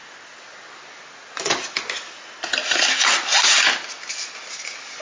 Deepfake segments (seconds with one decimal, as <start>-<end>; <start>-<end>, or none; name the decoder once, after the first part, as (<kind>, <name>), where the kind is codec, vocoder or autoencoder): none